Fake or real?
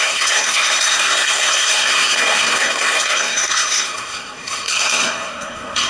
fake